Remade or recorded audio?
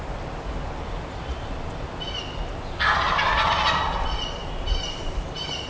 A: recorded